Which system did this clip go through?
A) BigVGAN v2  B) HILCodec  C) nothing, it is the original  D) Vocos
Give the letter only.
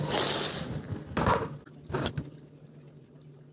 C